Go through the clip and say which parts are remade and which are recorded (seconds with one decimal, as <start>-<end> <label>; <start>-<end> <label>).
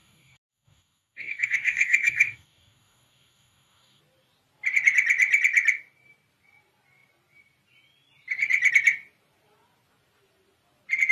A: 0.0-4.0 remade; 4.0-11.1 recorded